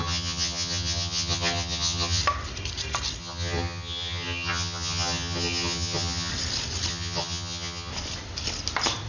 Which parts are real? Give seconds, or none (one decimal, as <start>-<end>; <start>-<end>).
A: 2.2-3.2; 6.3-6.9; 7.9-9.1